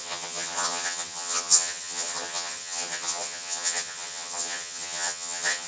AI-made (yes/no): yes